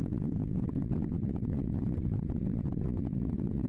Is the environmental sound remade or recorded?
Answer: remade